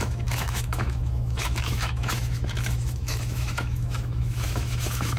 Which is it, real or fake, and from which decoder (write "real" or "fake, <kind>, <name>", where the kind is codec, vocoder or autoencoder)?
fake, autoencoder, DAC-VAE